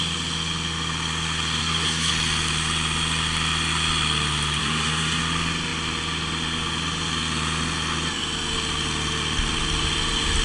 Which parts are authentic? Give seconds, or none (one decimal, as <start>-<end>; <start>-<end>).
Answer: 0.0-1.6; 2.1-4.6; 5.2-10.4